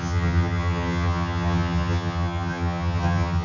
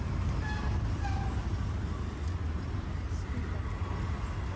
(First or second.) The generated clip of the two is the first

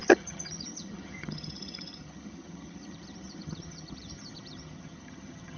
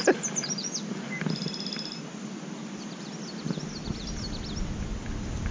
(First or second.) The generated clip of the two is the first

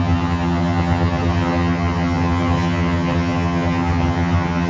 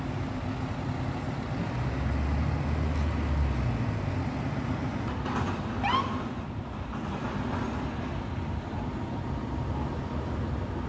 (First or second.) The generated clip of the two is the first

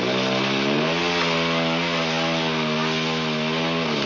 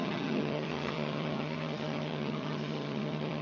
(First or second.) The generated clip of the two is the second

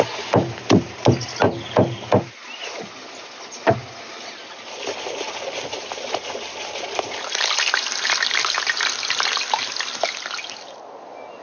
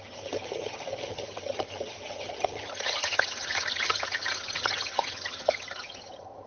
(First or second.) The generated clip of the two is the second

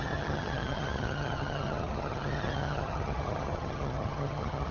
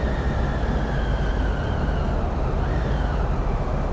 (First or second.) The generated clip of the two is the first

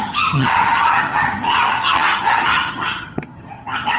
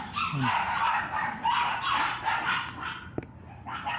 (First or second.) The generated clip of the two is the first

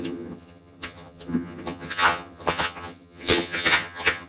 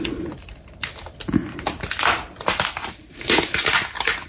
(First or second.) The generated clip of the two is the first